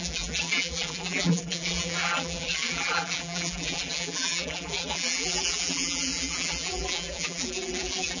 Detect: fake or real fake